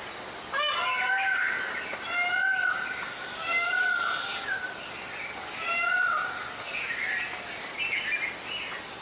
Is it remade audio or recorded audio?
recorded